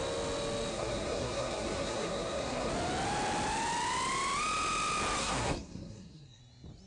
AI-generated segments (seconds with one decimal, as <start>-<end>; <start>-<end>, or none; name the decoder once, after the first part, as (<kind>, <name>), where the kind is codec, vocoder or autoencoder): 0.7-2.7 (codec, SNAC); 5.2-6.4

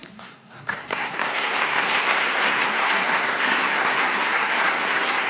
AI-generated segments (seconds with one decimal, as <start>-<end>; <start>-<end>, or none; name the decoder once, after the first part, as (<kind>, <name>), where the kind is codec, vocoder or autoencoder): 0.0-5.3 (codec, SNAC)

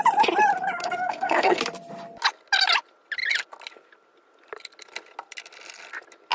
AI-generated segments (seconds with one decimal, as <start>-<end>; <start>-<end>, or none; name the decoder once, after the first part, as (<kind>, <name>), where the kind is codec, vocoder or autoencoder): 0.8-1.6 (codec, SNAC)